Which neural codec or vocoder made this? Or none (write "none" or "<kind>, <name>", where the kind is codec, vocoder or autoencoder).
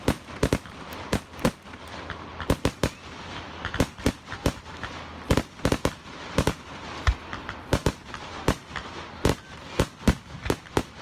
vocoder, BigVGAN v2